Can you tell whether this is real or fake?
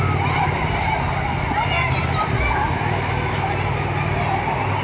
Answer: real